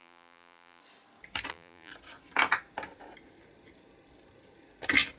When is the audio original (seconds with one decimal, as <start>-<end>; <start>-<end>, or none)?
0.8-1.5; 1.9-5.2